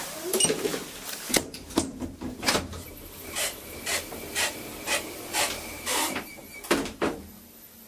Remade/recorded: remade